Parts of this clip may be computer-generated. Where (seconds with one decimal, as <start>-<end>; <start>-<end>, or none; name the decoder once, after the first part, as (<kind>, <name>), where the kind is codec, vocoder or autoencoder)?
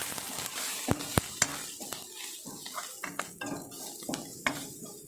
0.0-0.9 (vocoder, BigVGAN v2); 4.3-5.1